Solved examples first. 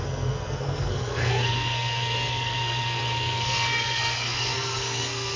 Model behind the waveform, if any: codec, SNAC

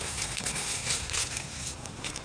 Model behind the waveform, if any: codec, SNAC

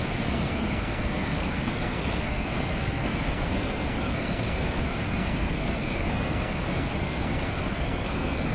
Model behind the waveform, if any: codec, SNAC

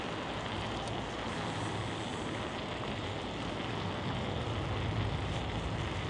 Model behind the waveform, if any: none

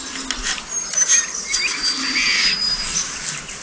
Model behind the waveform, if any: none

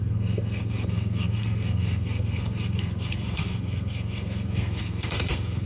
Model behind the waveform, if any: codec, SNAC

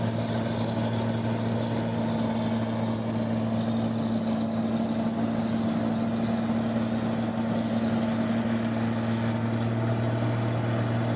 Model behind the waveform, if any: none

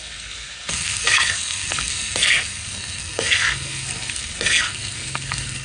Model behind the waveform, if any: codec, SNAC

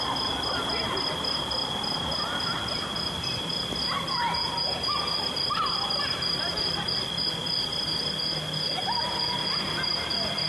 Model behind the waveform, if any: none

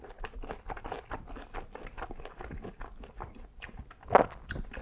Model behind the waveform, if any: none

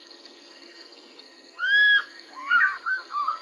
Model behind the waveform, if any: codec, SNAC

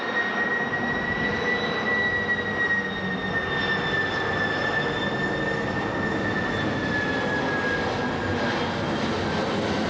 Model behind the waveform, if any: none